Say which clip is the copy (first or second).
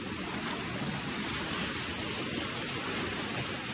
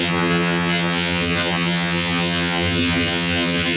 second